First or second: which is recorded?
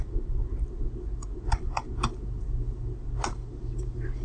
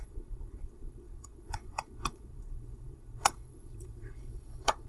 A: first